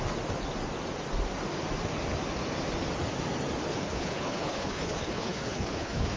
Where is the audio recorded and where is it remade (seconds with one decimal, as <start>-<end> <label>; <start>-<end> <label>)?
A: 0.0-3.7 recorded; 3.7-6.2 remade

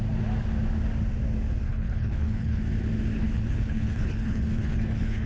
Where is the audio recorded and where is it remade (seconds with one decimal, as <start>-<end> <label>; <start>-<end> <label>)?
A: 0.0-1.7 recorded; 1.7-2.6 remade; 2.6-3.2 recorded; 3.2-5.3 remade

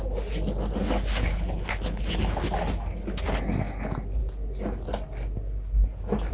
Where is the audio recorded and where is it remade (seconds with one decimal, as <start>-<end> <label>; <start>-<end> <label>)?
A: 0.0-1.2 recorded; 1.2-1.8 remade; 1.8-6.3 recorded

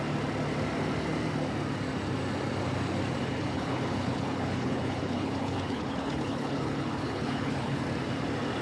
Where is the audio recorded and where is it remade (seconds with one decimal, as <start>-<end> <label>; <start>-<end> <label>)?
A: 0.0-3.2 recorded; 3.2-7.8 remade; 7.8-8.6 recorded

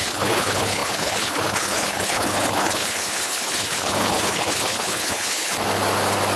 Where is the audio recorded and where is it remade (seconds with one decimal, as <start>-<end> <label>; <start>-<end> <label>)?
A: 0.0-5.5 remade; 5.5-6.4 recorded

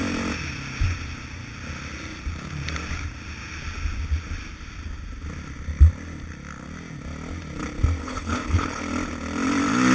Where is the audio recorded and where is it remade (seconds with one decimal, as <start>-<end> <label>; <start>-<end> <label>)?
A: 0.0-8.0 recorded; 8.0-8.8 remade; 8.8-9.9 recorded